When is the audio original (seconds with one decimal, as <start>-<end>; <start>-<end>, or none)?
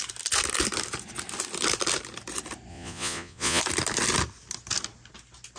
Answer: 0.0-2.7; 3.6-5.6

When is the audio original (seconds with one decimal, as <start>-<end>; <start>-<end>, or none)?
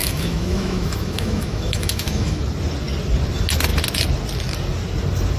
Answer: 2.4-5.4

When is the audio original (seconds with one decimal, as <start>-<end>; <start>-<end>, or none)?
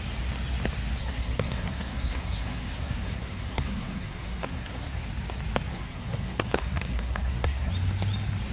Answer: 0.0-1.0; 5.0-5.7; 7.7-8.5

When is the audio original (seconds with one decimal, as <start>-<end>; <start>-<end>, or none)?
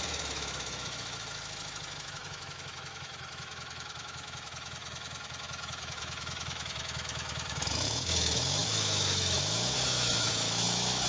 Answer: none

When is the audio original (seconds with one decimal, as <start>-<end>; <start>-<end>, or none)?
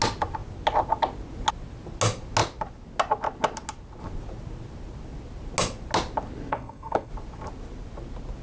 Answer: 0.0-6.5; 7.1-8.4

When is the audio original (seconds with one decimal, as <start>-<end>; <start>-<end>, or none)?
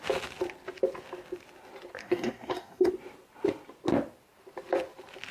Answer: 0.0-2.0; 2.9-5.3